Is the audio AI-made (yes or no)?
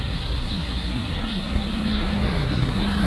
yes